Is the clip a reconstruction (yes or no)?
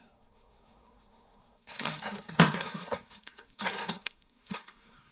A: yes